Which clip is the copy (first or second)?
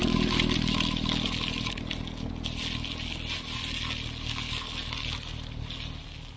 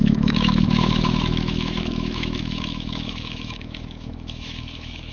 second